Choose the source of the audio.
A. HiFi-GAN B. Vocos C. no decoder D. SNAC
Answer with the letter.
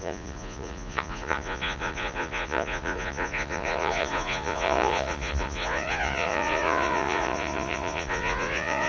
B